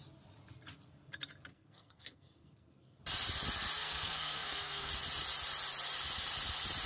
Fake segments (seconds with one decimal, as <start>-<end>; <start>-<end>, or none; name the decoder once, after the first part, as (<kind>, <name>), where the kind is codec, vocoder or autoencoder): 1.5-3.0 (codec, SNAC); 3.8-4.9